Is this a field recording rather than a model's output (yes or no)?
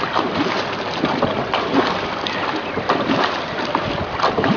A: no